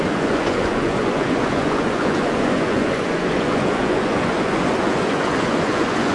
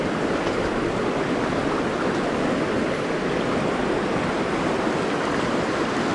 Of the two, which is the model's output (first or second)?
first